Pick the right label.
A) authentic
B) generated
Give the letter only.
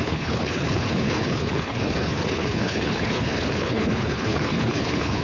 B